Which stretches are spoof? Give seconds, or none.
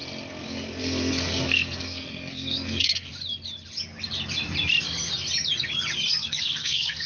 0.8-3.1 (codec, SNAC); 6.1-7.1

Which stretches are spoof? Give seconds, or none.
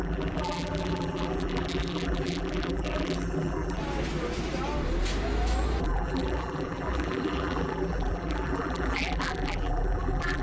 0.0-3.8 (vocoder, BigVGAN v2); 5.8-10.4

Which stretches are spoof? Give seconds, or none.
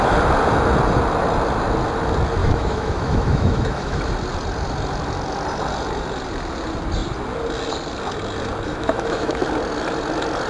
2.4-4.0 (autoencoder, DAC-VAE); 8.7-9.4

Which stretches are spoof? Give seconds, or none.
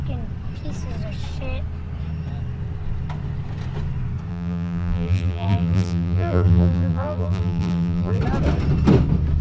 4.3-8.2 (vocoder, BigVGAN v2)